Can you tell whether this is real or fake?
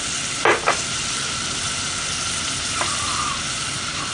real